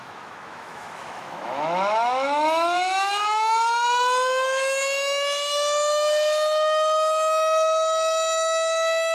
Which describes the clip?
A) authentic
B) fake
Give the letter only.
B